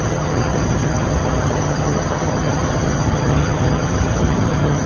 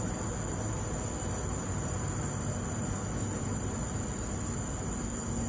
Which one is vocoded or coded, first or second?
first